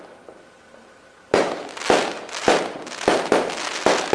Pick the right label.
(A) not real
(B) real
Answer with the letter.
B